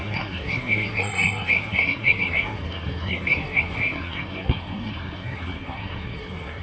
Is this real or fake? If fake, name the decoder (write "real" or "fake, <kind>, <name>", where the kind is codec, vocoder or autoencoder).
fake, codec, SNAC